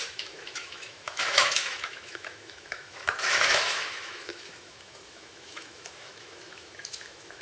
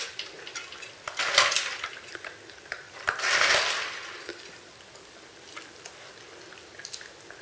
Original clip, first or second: second